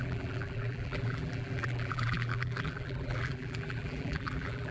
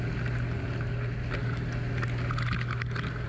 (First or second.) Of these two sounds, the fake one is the first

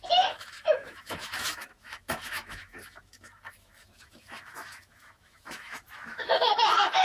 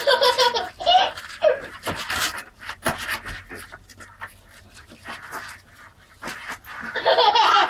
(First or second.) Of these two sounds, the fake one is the first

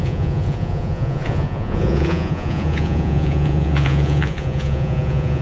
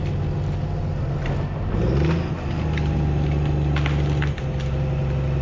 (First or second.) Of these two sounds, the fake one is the first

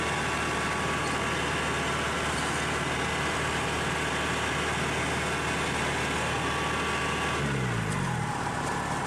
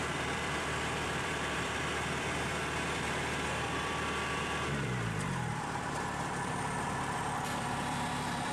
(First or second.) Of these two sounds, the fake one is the second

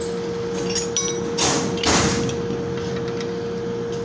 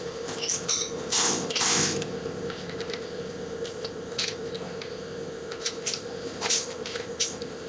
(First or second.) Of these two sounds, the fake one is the second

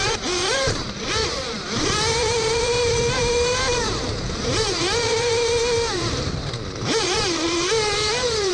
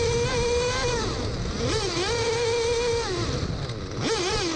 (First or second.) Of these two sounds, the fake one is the first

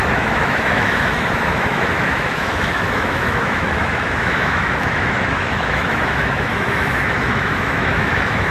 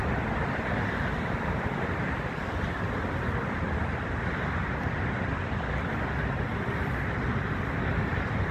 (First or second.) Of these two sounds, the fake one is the first